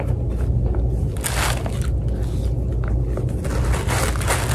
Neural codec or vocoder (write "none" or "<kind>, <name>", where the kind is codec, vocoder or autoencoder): none